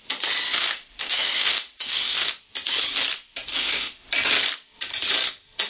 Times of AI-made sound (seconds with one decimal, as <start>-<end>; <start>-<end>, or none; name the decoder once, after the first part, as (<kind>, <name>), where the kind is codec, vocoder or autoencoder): 0.6-2.3 (autoencoder, DAC-VAE); 3.5-4.1